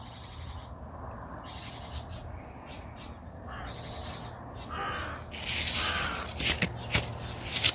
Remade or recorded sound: recorded